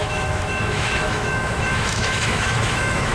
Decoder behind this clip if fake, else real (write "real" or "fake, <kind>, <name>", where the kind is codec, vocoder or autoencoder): fake, autoencoder, DAC-VAE